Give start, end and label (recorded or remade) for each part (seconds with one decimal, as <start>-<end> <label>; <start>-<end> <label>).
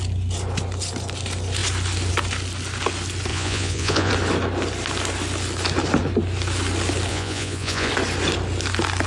0.0-3.3 recorded; 3.3-4.1 remade; 4.1-7.1 recorded; 7.1-7.9 remade; 7.9-9.1 recorded